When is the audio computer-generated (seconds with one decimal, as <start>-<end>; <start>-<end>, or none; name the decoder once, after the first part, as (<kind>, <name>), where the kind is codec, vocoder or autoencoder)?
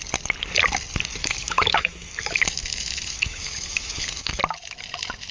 1.2-4.4 (autoencoder, DAC-VAE)